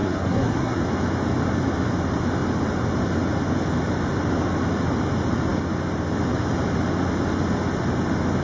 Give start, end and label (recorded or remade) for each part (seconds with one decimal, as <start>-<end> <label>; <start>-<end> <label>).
0.0-0.8 remade; 0.8-8.4 recorded